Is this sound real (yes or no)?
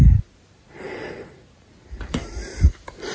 yes